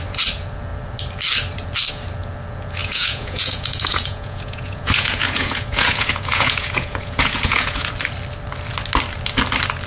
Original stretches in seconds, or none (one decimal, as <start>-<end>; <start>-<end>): 0.0-2.8; 7.9-9.9

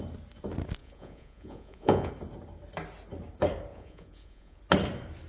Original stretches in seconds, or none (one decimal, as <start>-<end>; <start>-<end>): 0.0-0.8; 2.1-3.7; 4.6-5.3

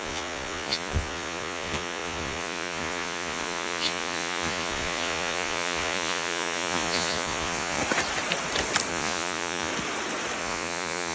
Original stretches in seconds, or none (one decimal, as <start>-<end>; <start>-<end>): 7.8-8.9; 9.7-10.4

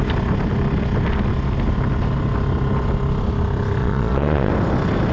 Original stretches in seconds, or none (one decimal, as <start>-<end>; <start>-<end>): 0.0-3.8; 4.5-5.1